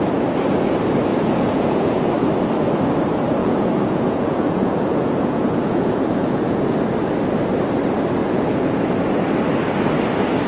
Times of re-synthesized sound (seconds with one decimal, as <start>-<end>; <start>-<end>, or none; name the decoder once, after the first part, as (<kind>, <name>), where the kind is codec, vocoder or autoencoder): 1.1-2.1 (vocoder, Vocos); 3.4-6.7; 8.2-8.8